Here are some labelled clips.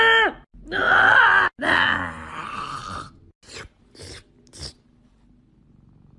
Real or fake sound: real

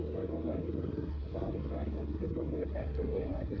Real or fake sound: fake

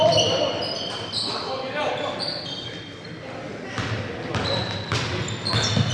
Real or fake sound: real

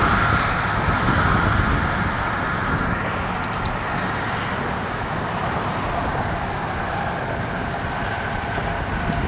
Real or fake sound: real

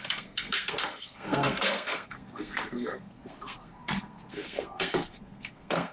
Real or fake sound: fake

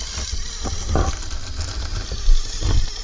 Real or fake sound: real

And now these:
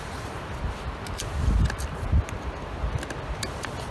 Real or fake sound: real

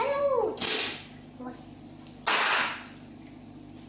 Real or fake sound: real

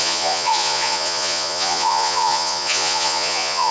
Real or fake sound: fake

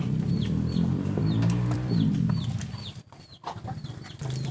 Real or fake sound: fake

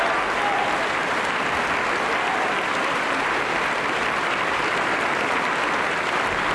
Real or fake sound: real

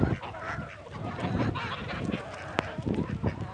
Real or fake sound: real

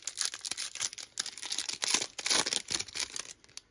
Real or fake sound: real